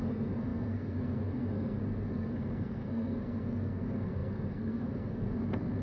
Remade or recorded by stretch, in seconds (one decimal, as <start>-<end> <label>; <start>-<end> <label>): 0.0-5.8 remade